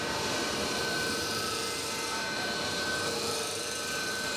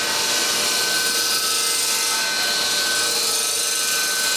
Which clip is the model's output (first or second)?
first